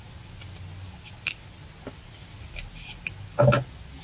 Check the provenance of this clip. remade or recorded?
recorded